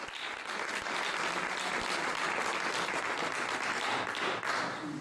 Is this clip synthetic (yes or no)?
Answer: no